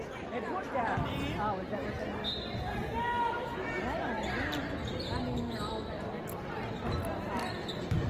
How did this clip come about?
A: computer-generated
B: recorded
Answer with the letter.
B